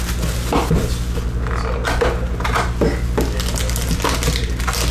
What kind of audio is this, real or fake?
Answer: real